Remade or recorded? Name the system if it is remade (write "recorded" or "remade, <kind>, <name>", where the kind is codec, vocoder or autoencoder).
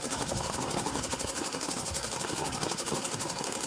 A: remade, codec, SNAC